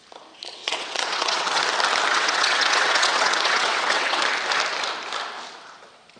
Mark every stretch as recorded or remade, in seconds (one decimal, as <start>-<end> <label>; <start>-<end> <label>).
0.0-0.6 recorded; 0.6-1.6 remade; 1.6-2.1 recorded; 2.1-4.2 remade; 4.2-6.2 recorded